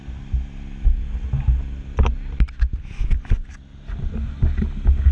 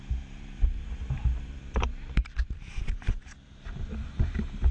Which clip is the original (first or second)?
first